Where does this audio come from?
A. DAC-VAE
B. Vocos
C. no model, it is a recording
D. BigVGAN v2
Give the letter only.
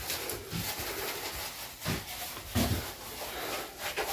C